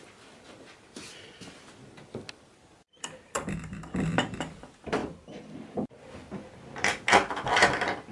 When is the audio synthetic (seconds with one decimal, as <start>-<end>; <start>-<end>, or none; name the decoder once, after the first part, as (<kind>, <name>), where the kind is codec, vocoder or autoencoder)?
5.0-6.1 (vocoder, BigVGAN v2)